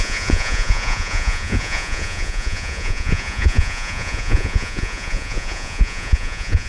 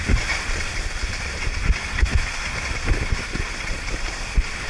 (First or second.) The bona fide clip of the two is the second